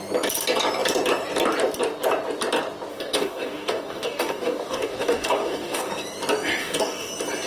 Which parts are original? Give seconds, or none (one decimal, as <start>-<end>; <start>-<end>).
0.0-2.9; 5.9-6.6; 7.1-7.5